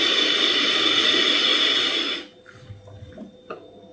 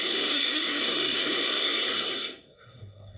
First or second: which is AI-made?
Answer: second